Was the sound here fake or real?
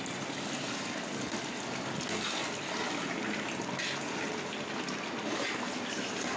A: real